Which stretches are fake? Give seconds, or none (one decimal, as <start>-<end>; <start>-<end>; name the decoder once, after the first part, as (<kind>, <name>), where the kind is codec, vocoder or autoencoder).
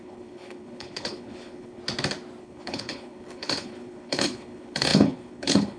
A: 0.0-1.8 (codec, HILCodec); 2.4-5.8